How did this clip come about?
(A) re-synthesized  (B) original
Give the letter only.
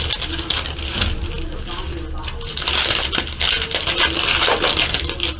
B